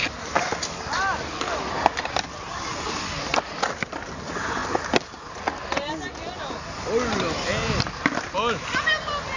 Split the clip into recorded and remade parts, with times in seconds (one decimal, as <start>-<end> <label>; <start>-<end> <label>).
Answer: 0.0-9.4 recorded